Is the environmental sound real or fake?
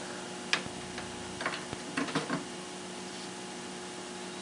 real